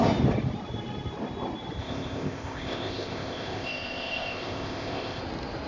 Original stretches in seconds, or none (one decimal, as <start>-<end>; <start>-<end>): 0.0-1.8; 5.2-5.7